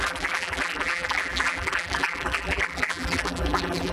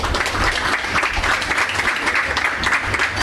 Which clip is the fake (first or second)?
first